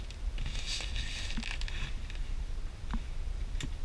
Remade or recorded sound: recorded